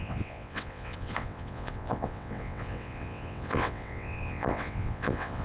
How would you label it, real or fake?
fake